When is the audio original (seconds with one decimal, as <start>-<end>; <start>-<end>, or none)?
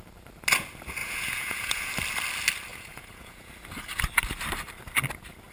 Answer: 0.0-1.0; 1.9-2.7; 3.5-5.5